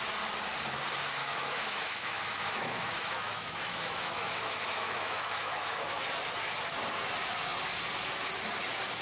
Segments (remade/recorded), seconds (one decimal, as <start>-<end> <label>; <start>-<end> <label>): 0.0-1.2 recorded; 1.2-6.0 remade; 6.0-9.0 recorded